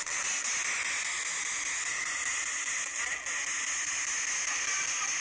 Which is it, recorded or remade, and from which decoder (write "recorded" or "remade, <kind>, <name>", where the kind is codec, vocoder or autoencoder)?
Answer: recorded